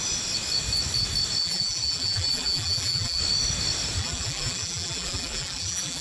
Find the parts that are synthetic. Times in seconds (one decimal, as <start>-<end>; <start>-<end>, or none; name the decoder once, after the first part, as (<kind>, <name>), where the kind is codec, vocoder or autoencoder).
1.4-3.2 (vocoder, BigVGAN v2); 4.0-6.0